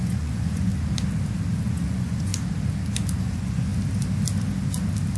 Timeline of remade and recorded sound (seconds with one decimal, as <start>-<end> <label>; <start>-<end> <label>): 0.0-0.7 remade; 0.7-1.7 recorded; 1.7-2.3 remade; 2.3-3.2 recorded; 3.2-3.7 remade; 3.7-5.2 recorded